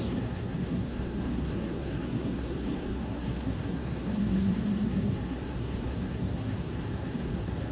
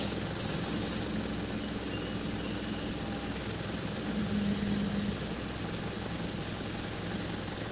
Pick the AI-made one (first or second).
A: first